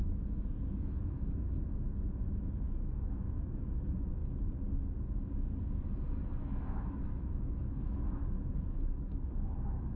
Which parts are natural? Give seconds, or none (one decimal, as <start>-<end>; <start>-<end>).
4.2-6.4